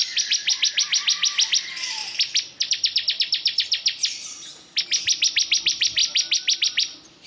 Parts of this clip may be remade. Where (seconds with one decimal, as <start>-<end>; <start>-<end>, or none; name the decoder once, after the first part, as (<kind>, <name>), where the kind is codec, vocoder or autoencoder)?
0.0-0.4 (vocoder, BigVGAN v2); 1.5-4.5; 5.6-6.0; 6.6-7.3